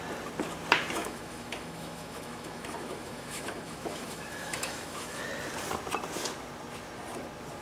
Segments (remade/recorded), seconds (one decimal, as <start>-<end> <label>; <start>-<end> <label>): 0.0-1.0 recorded; 1.0-5.2 remade; 5.2-7.6 recorded